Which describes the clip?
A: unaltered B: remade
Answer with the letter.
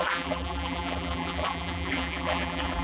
B